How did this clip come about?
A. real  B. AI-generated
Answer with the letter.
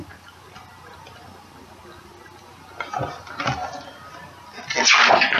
A